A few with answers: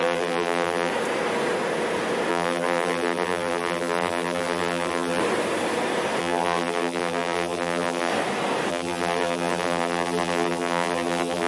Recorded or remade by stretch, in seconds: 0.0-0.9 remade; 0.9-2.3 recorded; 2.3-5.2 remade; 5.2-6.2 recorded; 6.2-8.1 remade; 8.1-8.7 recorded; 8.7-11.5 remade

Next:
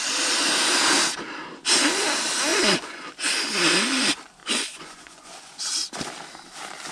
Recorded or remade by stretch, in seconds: 0.0-2.5 recorded; 2.5-3.1 remade; 3.1-4.4 recorded; 4.4-5.6 remade; 5.6-6.9 recorded